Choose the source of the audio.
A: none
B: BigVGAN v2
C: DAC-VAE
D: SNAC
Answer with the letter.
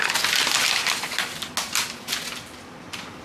A